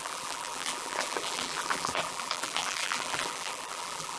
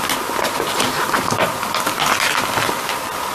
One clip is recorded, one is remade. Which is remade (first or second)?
first